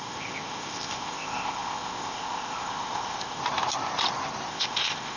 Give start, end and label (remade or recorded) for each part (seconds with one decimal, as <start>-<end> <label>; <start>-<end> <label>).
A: 0.0-3.4 remade; 3.4-4.5 recorded; 4.5-5.2 remade